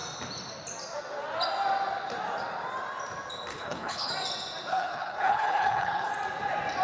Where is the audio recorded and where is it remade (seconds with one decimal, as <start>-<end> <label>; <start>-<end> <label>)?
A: 0.0-3.5 recorded; 3.5-4.1 remade; 4.1-4.7 recorded; 4.7-6.1 remade; 6.1-6.8 recorded